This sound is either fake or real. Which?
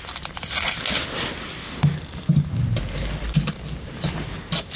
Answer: real